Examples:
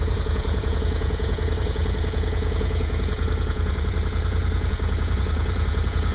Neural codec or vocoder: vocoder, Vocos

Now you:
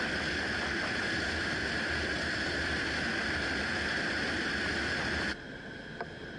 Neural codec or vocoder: none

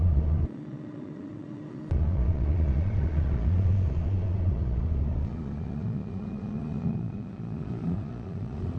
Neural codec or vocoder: vocoder, Vocos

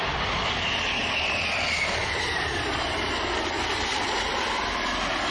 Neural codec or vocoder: none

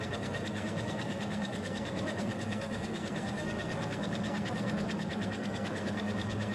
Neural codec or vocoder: codec, SNAC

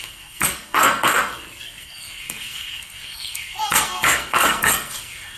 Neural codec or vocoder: codec, SNAC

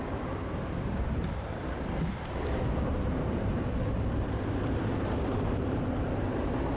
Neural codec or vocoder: vocoder, BigVGAN v2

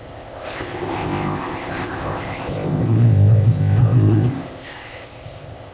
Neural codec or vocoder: codec, ZipCodec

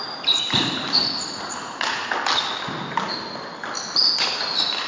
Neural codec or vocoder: none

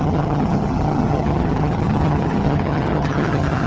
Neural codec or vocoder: vocoder, HiFi-GAN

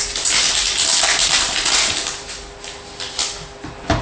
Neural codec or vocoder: none